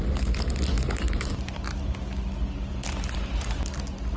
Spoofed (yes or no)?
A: no